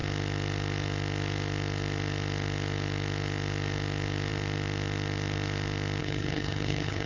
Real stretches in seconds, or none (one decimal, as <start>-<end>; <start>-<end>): 0.0-6.0